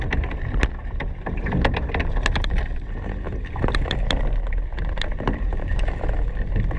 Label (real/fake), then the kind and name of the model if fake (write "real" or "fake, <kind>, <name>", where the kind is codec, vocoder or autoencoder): fake, vocoder, BigVGAN v2